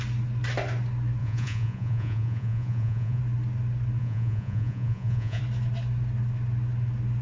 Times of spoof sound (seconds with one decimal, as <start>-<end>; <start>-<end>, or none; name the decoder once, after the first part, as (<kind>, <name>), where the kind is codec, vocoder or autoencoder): 1.2-3.2 (vocoder, Vocos); 4.0-5.4